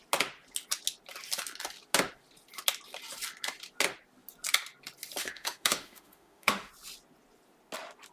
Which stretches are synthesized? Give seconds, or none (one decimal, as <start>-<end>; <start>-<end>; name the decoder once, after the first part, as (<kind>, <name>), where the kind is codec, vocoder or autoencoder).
5.2-6.7 (autoencoder, DAC-VAE)